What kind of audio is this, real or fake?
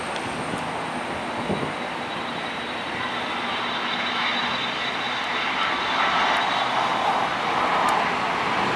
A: real